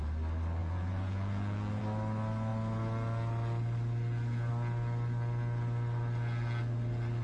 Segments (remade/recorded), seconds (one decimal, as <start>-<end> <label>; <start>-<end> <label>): 0.0-0.6 recorded; 0.6-1.8 remade; 1.8-7.2 recorded